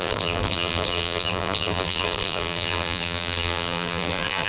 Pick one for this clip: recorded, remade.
remade